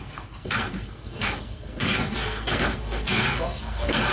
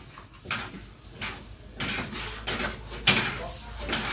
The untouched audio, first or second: second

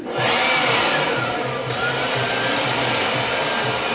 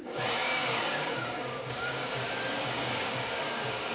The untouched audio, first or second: first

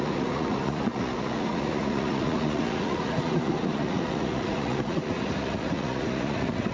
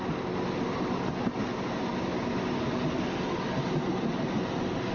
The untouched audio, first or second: second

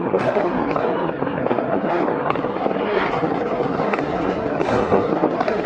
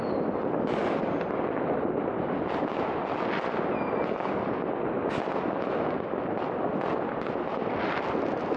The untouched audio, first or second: second